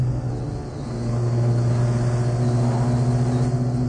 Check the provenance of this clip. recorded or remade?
recorded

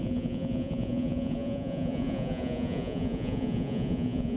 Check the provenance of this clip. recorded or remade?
remade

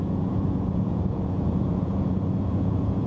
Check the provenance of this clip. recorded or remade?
remade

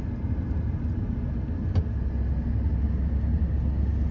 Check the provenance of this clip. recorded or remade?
recorded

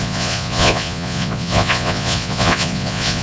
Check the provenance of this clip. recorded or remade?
remade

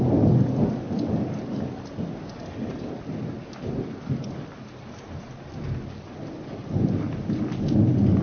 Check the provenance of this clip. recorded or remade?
recorded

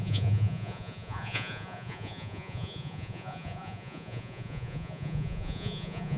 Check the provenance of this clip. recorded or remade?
remade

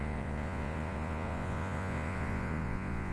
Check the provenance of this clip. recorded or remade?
remade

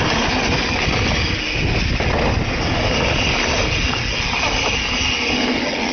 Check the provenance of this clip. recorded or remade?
recorded